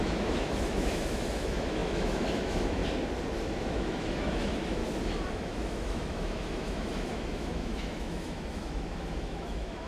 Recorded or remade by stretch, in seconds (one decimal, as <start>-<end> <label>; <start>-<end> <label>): 0.0-2.8 remade; 2.8-3.6 recorded; 3.6-4.8 remade; 4.8-5.4 recorded; 5.4-9.9 remade